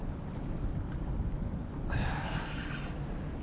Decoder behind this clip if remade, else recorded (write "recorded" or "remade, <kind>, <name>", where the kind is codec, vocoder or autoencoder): recorded